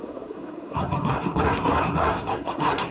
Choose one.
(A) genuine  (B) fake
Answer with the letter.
B